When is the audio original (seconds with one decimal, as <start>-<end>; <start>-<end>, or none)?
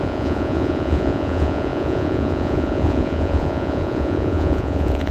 none